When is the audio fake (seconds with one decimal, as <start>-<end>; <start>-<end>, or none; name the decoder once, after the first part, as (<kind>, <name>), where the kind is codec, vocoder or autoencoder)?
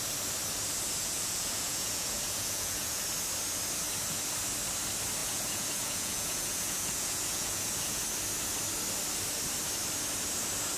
1.0-3.0 (vocoder, Vocos); 5.2-8.0